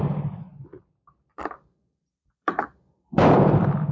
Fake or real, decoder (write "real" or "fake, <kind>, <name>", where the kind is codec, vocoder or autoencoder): fake, vocoder, BigVGAN v2